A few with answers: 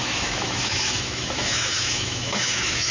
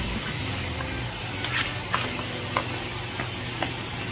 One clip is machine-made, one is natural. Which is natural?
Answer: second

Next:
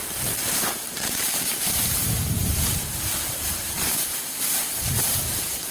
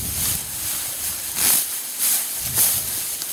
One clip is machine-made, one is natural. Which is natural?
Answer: second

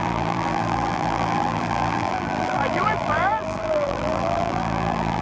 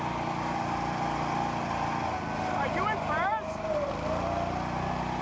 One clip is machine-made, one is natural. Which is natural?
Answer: second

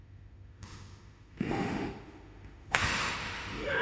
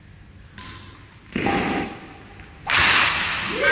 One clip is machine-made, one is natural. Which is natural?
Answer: second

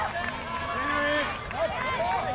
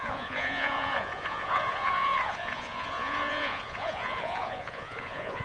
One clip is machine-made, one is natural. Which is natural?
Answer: first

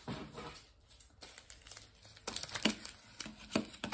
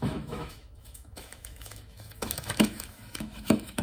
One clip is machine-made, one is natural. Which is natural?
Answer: first